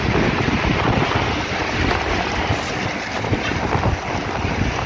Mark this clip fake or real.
real